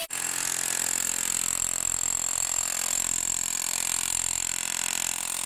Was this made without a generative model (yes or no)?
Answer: yes